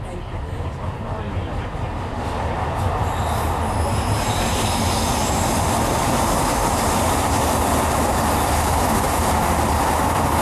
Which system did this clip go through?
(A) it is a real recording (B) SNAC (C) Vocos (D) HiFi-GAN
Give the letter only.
A